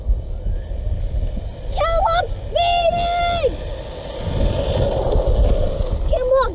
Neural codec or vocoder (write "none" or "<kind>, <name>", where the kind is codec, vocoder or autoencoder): none